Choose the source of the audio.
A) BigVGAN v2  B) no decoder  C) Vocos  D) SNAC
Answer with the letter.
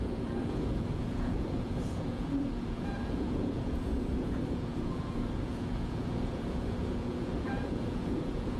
C